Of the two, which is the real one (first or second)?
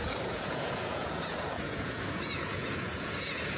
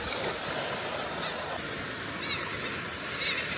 second